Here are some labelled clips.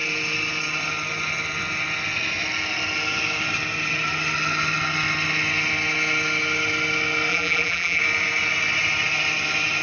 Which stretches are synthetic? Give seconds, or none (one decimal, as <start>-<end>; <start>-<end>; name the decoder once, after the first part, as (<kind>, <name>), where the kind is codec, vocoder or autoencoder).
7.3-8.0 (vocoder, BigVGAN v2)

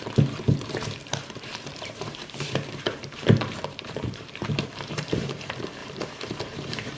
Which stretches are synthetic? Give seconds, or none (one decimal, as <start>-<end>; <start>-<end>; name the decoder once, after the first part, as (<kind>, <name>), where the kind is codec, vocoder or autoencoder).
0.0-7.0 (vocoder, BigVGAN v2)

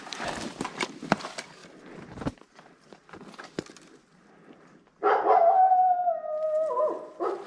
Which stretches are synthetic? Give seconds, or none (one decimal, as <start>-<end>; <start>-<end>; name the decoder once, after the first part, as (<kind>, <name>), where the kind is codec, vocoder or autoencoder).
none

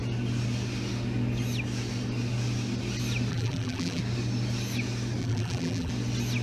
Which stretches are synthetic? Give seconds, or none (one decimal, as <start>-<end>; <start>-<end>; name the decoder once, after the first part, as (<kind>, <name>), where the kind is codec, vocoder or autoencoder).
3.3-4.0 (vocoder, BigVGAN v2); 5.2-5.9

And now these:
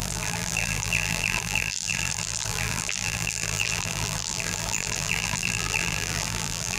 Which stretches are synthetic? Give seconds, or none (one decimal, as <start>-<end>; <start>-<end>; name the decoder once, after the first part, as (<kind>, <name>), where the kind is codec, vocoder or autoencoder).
0.0-6.8 (vocoder, BigVGAN v2)

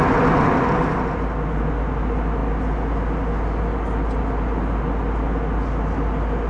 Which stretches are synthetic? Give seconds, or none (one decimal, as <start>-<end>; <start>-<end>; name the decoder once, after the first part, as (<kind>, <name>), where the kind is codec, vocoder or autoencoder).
none